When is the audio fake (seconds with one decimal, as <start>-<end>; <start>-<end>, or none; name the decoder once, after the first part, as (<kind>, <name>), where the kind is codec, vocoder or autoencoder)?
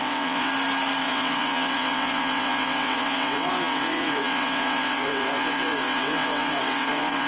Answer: 0.0-0.5 (vocoder, WaveNeXt); 1.0-7.3